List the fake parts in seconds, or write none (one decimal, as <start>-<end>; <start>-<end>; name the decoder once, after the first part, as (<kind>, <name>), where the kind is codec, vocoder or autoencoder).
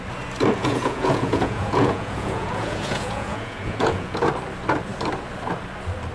0.6-4.3 (vocoder, Vocos)